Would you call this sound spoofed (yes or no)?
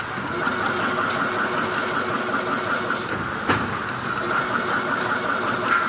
no